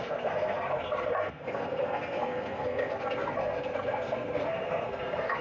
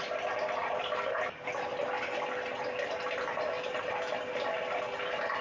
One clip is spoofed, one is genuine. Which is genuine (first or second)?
second